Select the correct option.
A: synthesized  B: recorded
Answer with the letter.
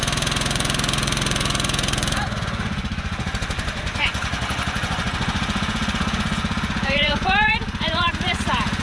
A